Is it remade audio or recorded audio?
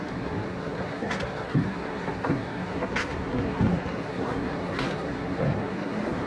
remade